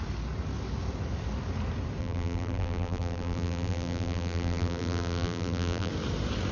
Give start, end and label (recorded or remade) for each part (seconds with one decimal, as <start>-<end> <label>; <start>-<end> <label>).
0.0-2.0 recorded; 2.0-5.9 remade; 5.9-6.5 recorded